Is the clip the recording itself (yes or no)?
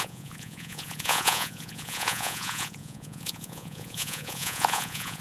no